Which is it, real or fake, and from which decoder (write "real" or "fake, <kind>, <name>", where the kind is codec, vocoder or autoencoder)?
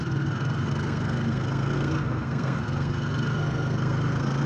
fake, codec, SNAC